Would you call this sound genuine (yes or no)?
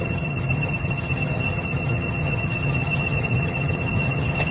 no